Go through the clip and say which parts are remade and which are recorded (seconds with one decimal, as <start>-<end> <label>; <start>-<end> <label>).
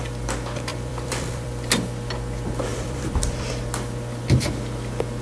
0.0-0.7 recorded; 0.7-1.7 remade; 1.7-2.7 recorded; 2.7-3.5 remade; 3.5-5.2 recorded